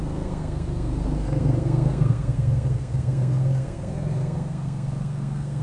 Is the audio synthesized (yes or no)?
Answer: yes